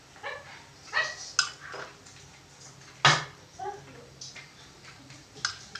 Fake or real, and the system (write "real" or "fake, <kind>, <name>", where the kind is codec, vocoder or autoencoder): real